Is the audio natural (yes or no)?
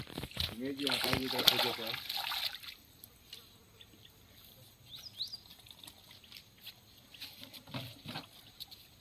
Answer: yes